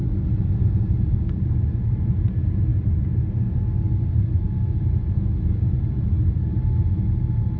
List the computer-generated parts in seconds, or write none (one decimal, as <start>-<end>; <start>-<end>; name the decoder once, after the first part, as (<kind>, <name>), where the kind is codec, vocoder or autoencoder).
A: none